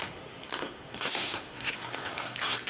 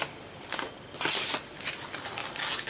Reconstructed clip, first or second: first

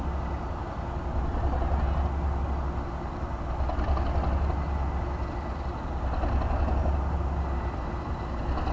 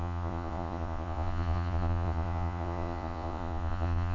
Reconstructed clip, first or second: second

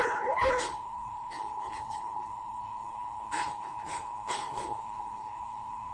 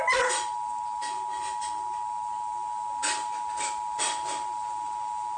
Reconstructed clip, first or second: first